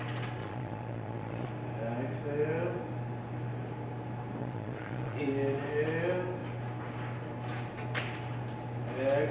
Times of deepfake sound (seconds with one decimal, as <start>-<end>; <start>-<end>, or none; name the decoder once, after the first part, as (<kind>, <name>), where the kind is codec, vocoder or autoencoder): 0.4-1.5 (vocoder, Vocos); 4.4-5.2